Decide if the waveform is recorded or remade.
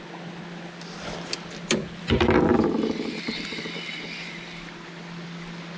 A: recorded